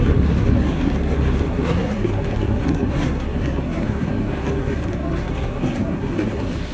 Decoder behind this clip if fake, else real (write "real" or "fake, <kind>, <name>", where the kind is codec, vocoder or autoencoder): fake, codec, SNAC